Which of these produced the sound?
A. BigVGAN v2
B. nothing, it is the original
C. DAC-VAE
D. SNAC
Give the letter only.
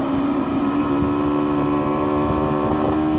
A